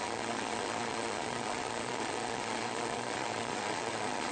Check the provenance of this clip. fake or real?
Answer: fake